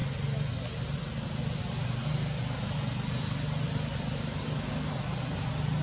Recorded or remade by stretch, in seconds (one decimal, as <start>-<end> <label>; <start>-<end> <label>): 0.0-5.8 recorded